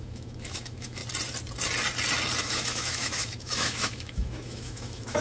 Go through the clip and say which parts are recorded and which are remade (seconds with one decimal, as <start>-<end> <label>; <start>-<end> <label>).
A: 0.0-1.0 remade; 1.0-2.4 recorded; 2.4-5.2 remade